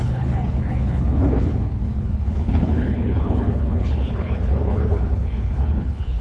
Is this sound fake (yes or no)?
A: yes